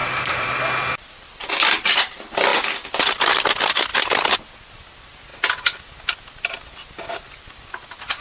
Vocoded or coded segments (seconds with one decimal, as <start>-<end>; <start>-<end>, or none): 0.0-0.6